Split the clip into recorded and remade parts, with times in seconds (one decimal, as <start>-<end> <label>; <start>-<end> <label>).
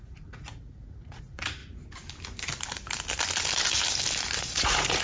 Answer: 0.0-1.6 remade; 1.6-4.4 recorded; 4.4-5.0 remade